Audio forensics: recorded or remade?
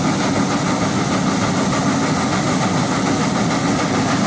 recorded